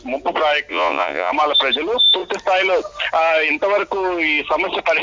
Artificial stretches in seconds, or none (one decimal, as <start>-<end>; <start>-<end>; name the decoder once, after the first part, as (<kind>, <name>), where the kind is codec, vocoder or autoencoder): 0.7-1.3 (vocoder, Vocos)